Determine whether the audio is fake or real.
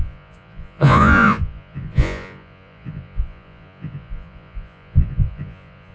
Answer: fake